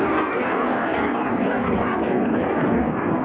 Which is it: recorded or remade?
remade